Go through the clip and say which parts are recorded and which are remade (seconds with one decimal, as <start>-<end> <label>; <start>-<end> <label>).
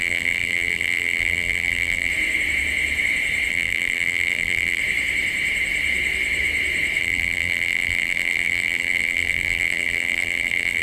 0.0-2.1 remade; 2.1-3.5 recorded; 3.5-4.8 remade; 4.8-7.0 recorded; 7.0-10.8 remade